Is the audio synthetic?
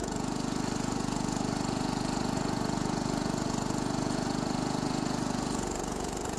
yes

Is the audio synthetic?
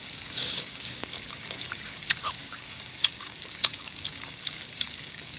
yes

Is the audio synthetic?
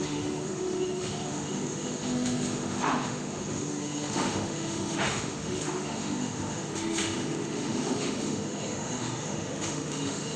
yes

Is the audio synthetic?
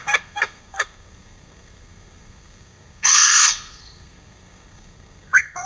yes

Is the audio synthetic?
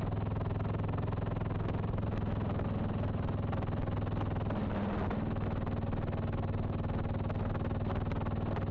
no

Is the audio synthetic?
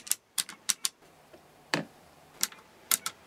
yes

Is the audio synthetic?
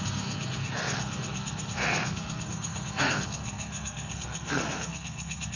yes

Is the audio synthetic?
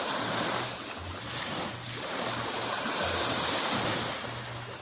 yes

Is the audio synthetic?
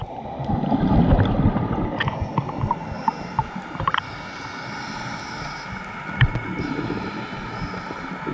no